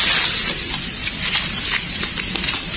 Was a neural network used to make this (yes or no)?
no